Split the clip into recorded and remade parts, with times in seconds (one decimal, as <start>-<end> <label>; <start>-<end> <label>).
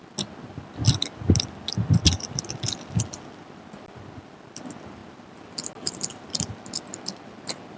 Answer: 0.0-7.8 recorded